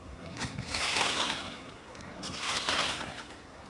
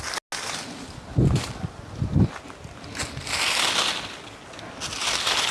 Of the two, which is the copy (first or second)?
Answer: first